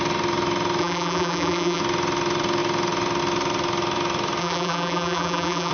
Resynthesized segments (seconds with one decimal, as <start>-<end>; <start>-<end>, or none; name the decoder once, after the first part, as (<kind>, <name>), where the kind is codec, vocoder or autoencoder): 0.8-1.8 (vocoder, BigVGAN v2); 4.4-5.7